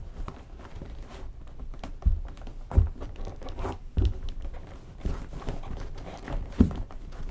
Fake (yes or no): no